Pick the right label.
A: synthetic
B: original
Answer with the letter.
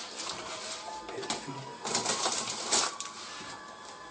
B